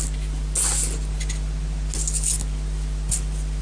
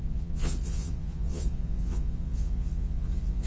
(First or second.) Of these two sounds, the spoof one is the second